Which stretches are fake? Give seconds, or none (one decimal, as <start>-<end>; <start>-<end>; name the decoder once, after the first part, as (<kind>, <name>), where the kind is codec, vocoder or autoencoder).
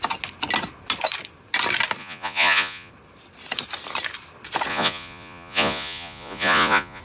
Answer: 2.0-2.9 (vocoder, Vocos); 4.7-7.0